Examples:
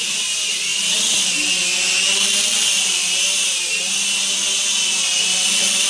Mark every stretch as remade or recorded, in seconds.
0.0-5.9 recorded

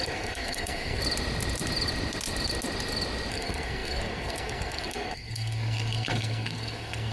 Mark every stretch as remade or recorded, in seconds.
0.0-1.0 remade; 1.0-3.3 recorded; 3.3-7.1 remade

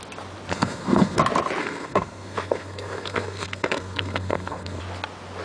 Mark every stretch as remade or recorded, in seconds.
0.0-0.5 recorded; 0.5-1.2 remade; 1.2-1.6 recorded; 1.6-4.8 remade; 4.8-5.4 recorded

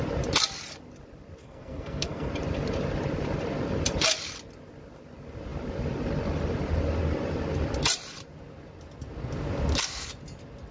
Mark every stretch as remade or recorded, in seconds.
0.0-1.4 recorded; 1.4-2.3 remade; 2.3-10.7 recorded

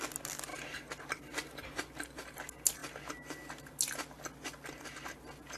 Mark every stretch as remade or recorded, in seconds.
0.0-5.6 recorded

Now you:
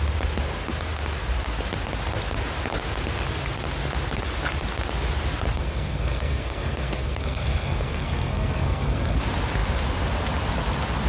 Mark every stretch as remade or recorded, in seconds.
0.0-5.5 recorded; 5.5-9.2 remade; 9.2-11.1 recorded

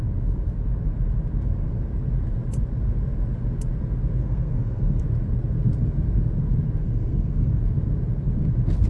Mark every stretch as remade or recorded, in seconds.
0.0-4.2 recorded; 4.2-5.0 remade; 5.0-6.8 recorded; 6.8-7.6 remade; 7.6-8.9 recorded